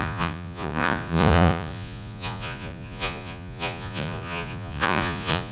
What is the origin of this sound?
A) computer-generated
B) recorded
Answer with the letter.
A